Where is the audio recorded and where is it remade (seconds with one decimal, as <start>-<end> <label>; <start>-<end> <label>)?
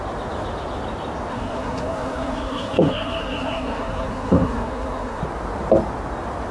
0.0-1.3 recorded; 1.3-5.2 remade; 5.2-6.5 recorded